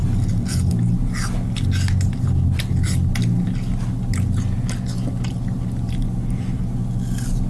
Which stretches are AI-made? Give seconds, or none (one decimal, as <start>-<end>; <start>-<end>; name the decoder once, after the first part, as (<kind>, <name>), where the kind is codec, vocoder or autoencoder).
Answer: none